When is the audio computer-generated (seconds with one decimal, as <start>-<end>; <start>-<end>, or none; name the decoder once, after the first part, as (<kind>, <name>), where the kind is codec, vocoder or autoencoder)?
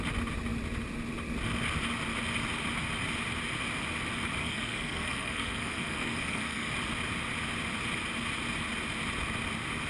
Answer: 4.4-6.7 (codec, SNAC)